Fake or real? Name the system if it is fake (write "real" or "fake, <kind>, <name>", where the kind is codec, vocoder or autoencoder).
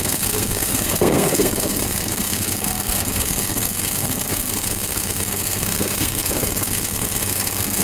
fake, codec, SNAC